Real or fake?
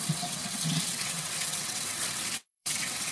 fake